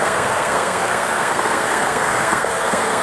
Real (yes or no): no